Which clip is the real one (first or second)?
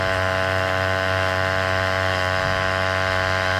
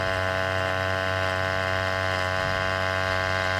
second